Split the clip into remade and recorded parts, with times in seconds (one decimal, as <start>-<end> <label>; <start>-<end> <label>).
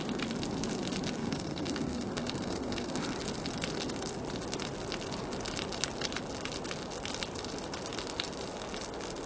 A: 0.0-1.2 recorded; 1.2-3.0 remade; 3.0-9.3 recorded